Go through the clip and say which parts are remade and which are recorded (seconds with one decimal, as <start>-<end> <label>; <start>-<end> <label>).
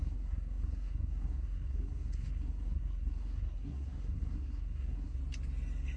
0.0-5.2 remade; 5.2-6.0 recorded